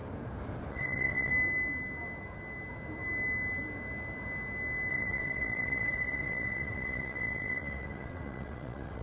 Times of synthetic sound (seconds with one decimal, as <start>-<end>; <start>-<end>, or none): 0.7-1.3; 4.9-9.0